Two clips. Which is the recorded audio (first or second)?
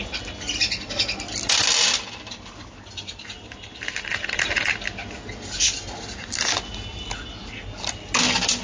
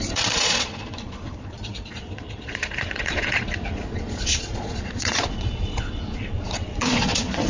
first